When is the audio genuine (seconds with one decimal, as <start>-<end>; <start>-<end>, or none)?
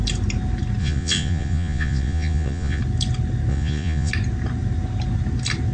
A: 0.0-0.8; 2.8-3.5; 4.1-5.7